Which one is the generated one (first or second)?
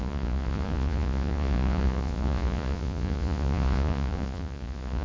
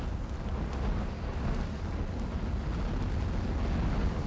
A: first